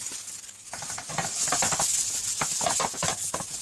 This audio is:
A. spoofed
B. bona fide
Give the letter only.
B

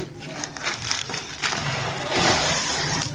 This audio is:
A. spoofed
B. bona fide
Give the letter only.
B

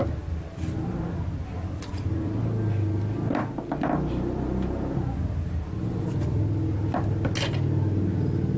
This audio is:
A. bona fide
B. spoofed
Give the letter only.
A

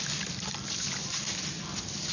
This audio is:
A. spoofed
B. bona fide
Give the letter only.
B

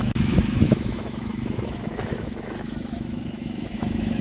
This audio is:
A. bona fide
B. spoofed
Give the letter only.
B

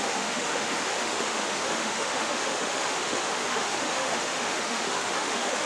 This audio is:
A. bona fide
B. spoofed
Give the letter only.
B